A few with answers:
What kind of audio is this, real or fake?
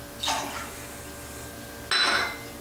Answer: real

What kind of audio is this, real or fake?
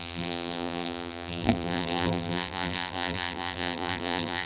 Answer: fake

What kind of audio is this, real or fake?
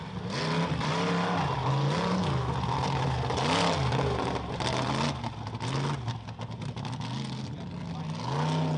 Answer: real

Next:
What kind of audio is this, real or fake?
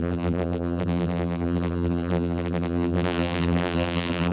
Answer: fake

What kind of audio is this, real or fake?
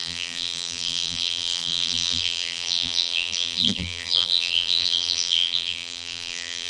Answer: fake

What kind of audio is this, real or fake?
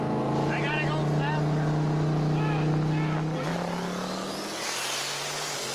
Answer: real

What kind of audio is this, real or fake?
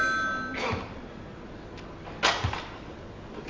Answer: real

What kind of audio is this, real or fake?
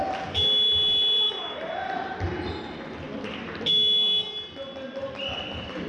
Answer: real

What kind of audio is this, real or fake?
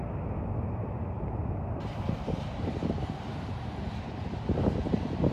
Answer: real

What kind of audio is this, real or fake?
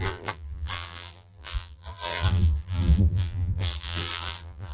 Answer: fake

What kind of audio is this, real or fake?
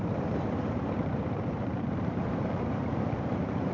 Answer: fake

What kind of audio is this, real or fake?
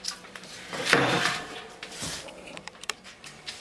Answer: fake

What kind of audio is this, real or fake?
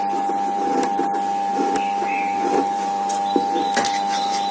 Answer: real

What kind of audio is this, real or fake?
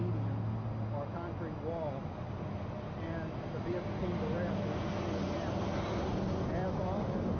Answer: real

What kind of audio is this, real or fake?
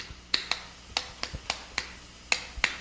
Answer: real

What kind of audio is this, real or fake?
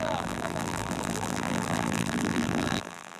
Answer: fake